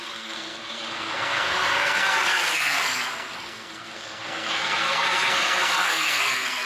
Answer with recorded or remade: remade